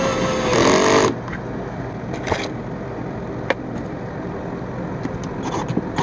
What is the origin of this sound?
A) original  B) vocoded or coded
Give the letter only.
A